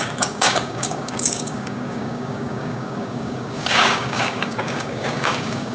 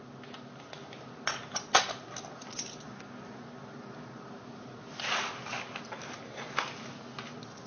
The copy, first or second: first